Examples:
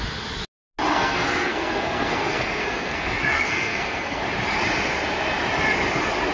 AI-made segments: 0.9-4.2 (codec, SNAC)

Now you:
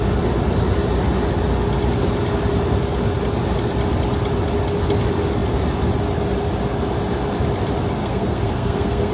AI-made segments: 8.0-9.1 (codec, SNAC)

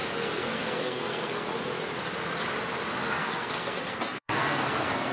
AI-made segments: 0.0-1.5 (codec, SNAC); 3.1-5.1

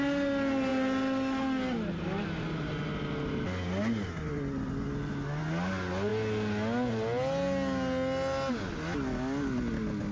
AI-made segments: none

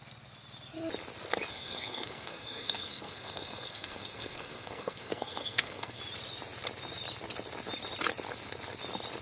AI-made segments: 1.5-6.0 (codec, SNAC)

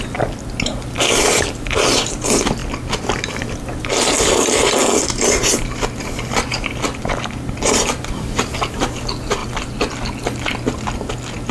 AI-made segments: none

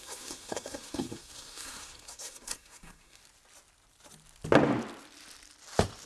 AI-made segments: 0.0-3.2 (codec, SNAC)

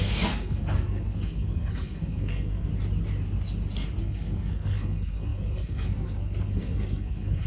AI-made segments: 0.0-2.7 (codec, SNAC); 4.0-7.5